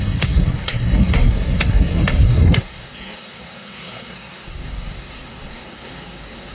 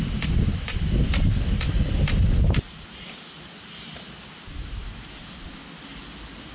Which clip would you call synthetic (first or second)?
first